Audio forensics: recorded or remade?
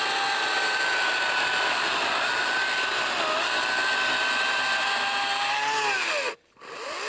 recorded